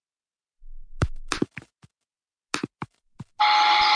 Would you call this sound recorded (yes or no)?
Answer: yes